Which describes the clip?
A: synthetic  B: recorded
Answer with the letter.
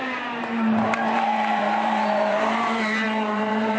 A